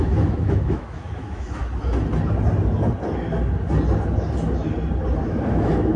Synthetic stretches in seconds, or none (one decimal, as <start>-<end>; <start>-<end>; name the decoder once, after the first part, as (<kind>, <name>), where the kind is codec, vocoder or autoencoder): 0.0-1.6 (autoencoder, DAC-VAE); 5.2-6.0